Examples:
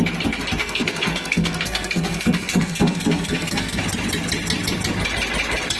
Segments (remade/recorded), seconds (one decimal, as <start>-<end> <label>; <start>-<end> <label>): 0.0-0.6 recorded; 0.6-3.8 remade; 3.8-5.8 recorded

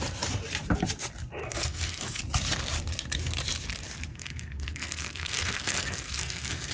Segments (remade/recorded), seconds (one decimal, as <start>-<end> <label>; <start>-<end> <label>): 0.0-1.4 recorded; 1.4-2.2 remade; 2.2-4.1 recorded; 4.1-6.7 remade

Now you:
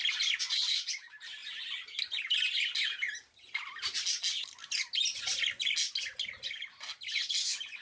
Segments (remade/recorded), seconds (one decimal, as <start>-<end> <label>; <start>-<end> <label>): 0.0-7.8 recorded